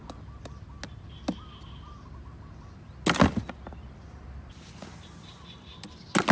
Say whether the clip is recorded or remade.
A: recorded